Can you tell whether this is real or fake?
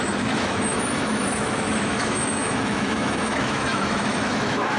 fake